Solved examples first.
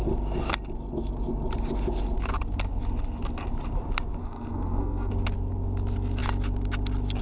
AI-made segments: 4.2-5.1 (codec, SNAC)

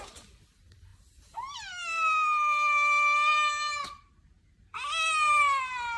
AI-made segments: none

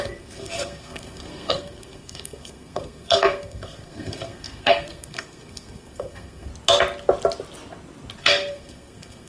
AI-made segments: 0.0-6.5 (codec, SNAC); 8.2-9.3

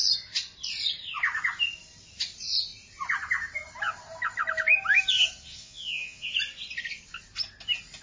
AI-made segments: 5.6-6.3 (vocoder, Vocos)

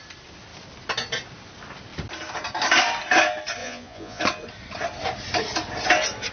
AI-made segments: 3.6-4.2 (vocoder, Vocos)